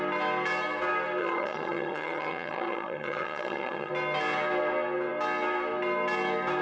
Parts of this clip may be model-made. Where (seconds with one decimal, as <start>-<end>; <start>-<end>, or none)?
1.2-3.9